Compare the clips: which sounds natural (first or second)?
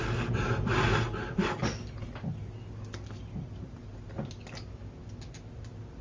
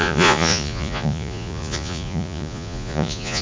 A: first